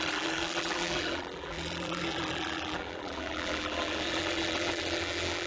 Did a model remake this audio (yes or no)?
yes